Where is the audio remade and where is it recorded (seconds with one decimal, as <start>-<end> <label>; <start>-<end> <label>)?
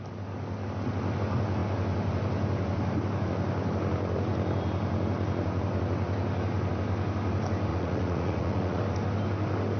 0.0-7.7 recorded; 7.7-8.8 remade; 8.8-9.8 recorded